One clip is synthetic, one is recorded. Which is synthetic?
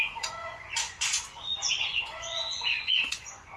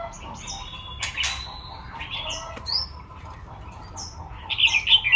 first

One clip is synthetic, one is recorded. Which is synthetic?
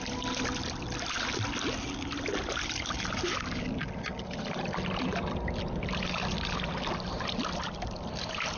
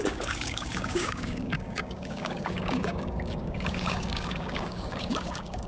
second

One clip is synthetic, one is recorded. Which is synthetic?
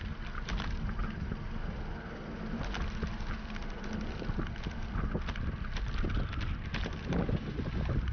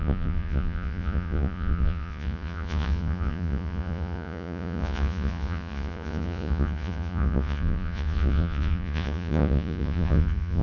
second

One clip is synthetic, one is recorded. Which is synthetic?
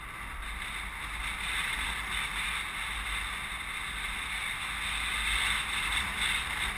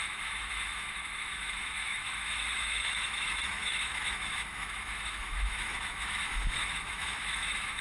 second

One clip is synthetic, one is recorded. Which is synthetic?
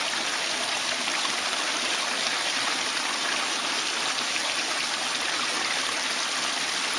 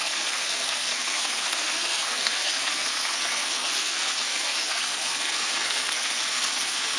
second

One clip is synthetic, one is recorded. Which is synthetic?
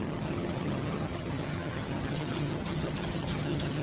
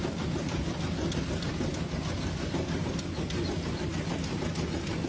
first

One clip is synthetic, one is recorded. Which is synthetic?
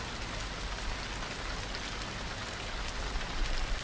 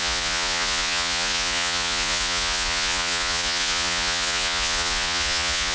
second